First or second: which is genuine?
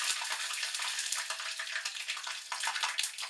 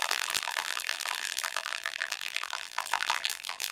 first